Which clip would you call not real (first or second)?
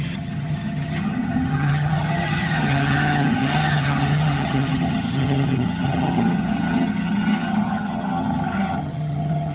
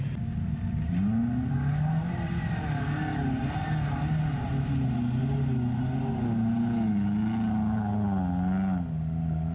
first